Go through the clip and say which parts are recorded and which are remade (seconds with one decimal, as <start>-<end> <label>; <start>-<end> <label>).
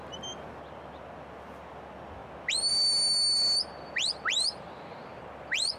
0.0-5.8 recorded